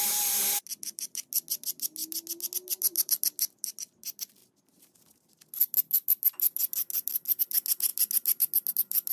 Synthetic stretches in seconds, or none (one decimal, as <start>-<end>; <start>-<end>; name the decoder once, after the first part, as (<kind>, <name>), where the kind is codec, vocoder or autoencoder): none